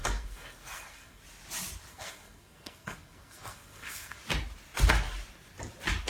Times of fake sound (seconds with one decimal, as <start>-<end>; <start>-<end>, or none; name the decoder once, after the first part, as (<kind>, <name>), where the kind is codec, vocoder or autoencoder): 0.0-1.2 (codec, SNAC); 1.9-4.2

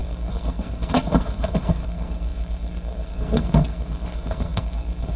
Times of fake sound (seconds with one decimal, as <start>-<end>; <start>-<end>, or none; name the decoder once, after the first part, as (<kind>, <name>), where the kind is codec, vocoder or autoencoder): 0.0-5.2 (codec, SNAC)

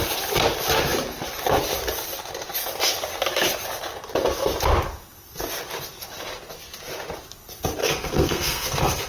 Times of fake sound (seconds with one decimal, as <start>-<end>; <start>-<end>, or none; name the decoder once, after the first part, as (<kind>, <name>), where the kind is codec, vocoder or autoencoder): 7.8-9.1 (codec, SNAC)

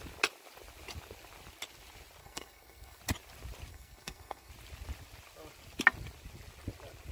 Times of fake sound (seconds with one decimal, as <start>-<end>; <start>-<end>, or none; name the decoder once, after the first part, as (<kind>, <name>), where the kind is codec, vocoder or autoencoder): 2.2-3.0 (codec, SNAC); 3.7-4.5

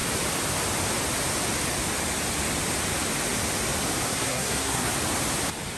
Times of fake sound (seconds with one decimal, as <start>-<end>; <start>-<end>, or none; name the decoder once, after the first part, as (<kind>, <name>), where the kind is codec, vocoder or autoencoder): 4.1-4.9 (codec, SNAC)

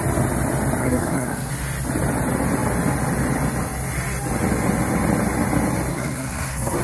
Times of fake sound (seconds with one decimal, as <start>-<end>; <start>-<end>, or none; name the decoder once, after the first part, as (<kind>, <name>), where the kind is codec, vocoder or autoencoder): 0.8-1.5 (codec, SNAC); 5.9-6.8

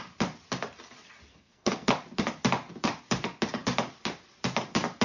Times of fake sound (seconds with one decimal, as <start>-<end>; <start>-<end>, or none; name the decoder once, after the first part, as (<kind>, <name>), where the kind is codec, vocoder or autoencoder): 1.3-1.9 (codec, SNAC)